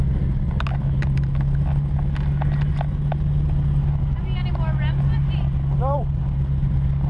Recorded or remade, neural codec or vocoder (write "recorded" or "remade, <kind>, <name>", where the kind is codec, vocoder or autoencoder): recorded